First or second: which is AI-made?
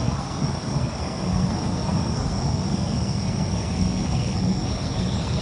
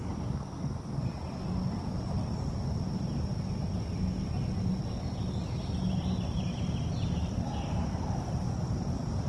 first